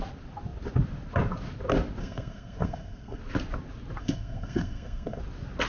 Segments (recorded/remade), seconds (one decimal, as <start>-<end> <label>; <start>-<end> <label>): 0.0-2.0 recorded; 2.0-3.2 remade; 3.2-4.0 recorded; 4.0-5.2 remade; 5.2-5.7 recorded

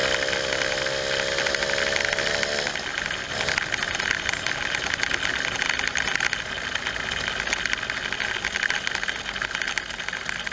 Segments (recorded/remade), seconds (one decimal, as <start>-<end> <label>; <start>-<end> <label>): 0.0-10.5 recorded